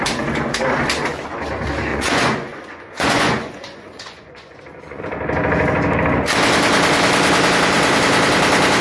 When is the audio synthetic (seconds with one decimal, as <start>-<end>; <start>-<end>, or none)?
1.9-5.0